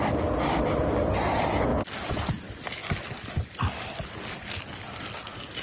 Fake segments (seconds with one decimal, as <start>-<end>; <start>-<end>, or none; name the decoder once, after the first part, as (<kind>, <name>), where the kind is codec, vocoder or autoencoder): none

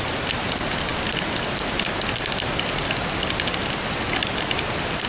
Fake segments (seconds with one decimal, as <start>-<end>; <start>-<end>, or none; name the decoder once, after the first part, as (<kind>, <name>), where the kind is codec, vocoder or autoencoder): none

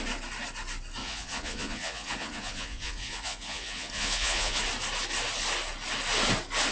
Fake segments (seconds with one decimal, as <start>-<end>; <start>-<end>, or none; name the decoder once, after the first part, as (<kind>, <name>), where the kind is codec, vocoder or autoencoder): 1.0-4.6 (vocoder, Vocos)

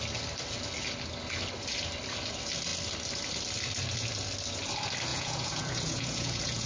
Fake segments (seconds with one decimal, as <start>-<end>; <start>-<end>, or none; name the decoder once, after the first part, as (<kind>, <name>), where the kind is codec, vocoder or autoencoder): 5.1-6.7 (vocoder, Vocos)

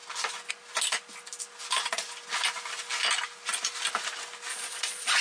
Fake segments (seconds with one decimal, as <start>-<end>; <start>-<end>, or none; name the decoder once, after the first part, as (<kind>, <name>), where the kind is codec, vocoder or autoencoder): 4.5-5.2 (vocoder, Vocos)